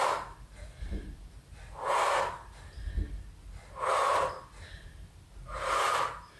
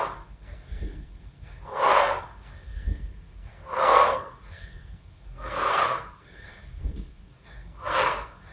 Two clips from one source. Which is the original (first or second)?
first